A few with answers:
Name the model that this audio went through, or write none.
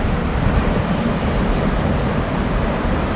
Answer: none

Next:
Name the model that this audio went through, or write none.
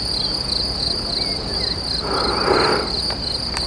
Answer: none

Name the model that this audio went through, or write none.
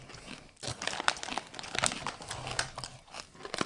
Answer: none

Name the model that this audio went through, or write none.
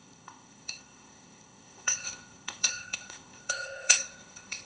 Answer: codec, ZipCodec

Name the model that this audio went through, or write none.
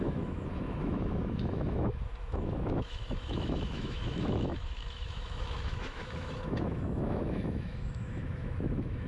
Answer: autoencoder, DAC-VAE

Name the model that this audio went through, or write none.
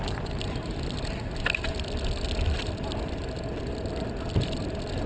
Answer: none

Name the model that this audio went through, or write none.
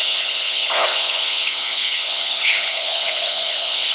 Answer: codec, HILCodec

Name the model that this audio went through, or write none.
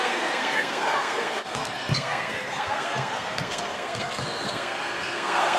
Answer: codec, SNAC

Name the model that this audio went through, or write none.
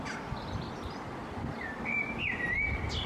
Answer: none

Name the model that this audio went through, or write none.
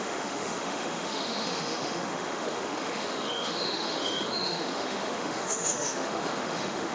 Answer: autoencoder, DAC-VAE